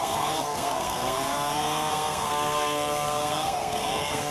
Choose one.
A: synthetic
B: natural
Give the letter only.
A